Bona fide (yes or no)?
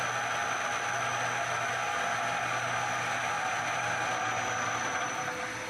yes